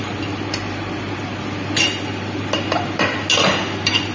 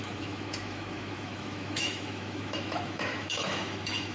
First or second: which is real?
first